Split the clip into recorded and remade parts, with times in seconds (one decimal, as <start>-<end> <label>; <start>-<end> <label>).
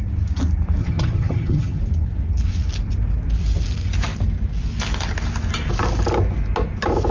0.0-0.8 recorded; 0.8-1.8 remade; 1.8-7.1 recorded